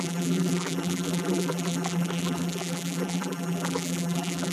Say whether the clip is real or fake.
fake